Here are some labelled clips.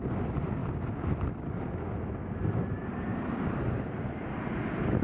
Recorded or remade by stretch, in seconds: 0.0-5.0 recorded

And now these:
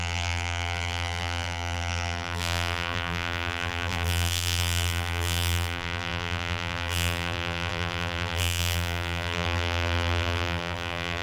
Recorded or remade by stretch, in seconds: 0.0-11.2 remade

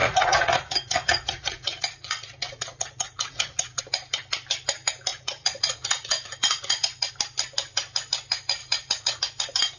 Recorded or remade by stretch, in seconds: 0.0-3.8 remade; 3.8-5.1 recorded; 5.1-7.1 remade; 7.1-8.6 recorded; 8.6-9.2 remade; 9.2-9.8 recorded